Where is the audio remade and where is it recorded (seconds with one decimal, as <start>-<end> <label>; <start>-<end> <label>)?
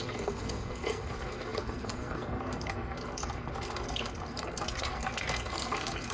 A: 0.0-6.1 remade